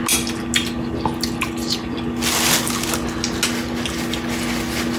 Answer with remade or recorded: recorded